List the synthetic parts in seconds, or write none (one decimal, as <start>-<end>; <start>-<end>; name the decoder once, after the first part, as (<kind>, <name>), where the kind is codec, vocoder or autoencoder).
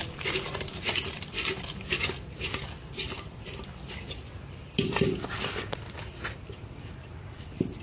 0.0-0.7 (vocoder, BigVGAN v2); 3.9-4.6; 6.9-7.8